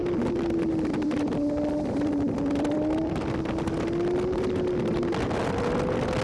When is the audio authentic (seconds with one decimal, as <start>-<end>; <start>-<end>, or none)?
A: 3.6-6.2